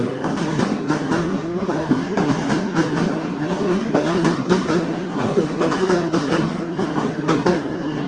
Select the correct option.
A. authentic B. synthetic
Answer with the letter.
B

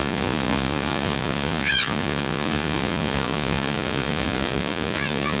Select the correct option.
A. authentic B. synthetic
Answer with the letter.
B